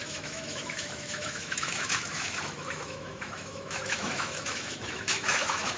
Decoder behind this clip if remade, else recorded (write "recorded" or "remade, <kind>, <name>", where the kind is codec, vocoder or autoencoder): remade, autoencoder, DAC-VAE